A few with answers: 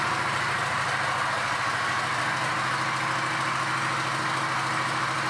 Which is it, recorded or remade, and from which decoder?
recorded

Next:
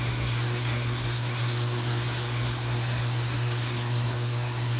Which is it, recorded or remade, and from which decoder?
remade, codec, SNAC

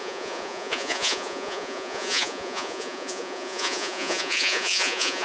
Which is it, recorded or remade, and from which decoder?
remade, vocoder, Vocos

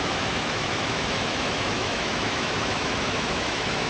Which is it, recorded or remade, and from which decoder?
remade, autoencoder, DAC-VAE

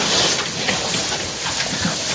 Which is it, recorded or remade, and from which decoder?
recorded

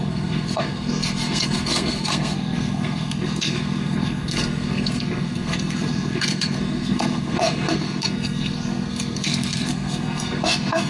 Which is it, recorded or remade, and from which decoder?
remade, codec, SNAC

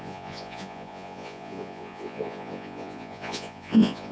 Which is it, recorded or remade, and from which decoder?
remade, vocoder, Vocos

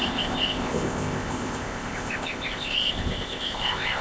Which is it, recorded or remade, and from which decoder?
remade, codec, ZipCodec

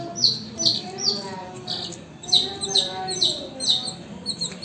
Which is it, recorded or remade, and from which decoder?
recorded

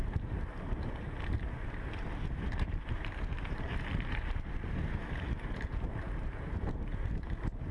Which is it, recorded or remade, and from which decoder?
remade, vocoder, BigVGAN v2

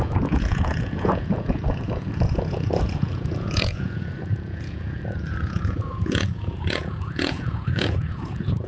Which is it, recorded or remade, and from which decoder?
remade, vocoder, Vocos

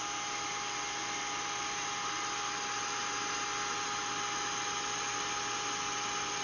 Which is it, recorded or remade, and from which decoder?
recorded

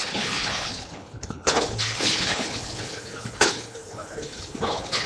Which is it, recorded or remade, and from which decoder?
remade, codec, HILCodec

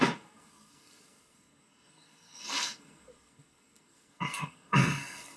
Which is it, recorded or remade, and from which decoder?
remade, codec, SNAC